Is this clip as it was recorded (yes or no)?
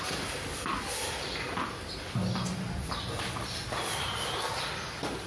yes